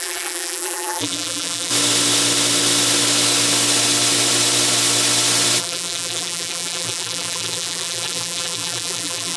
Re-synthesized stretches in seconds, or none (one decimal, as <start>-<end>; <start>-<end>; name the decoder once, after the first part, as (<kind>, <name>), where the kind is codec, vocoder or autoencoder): 0.0-1.7 (vocoder, BigVGAN v2); 5.6-9.4